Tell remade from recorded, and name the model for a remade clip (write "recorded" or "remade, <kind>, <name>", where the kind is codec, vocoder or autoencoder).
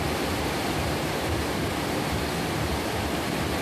remade, vocoder, BigVGAN v2